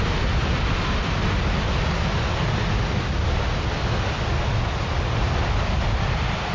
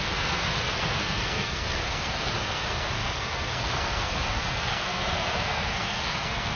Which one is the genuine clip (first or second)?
first